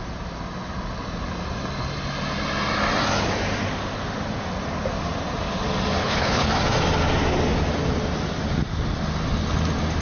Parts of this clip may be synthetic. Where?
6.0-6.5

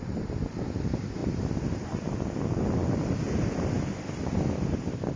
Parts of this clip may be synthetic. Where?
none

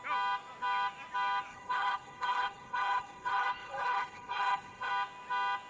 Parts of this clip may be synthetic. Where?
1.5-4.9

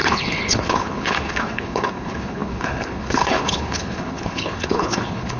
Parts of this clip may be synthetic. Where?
0.0-5.4

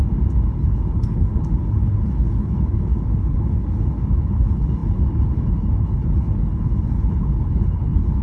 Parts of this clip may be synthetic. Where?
0.5-8.2

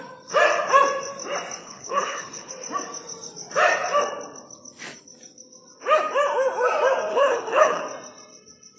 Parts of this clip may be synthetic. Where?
1.6-2.5; 7.1-7.8

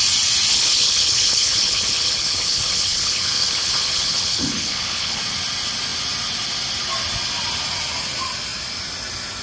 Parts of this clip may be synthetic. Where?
0.5-5.2